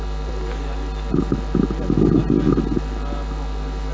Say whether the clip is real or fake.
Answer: real